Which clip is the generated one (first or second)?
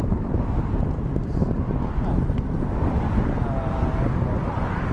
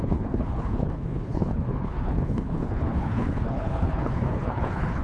second